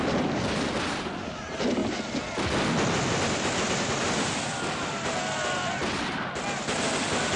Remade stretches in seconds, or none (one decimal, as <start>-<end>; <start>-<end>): none